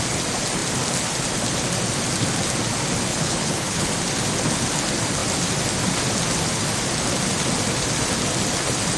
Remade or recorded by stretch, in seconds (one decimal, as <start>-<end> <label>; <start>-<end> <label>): 0.0-3.1 recorded; 3.1-3.9 remade; 3.9-9.0 recorded